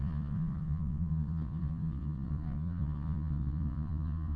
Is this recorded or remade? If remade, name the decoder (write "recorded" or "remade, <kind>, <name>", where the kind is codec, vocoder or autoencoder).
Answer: remade, vocoder, Vocos